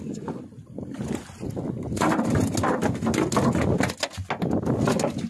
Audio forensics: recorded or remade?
recorded